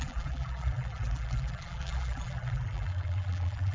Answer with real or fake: fake